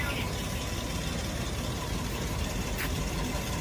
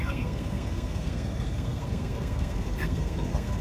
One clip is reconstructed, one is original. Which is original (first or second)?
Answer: first